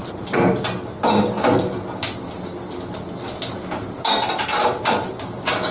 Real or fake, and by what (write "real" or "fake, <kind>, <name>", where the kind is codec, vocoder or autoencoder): real